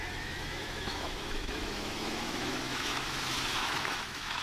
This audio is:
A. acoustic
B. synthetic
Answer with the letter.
B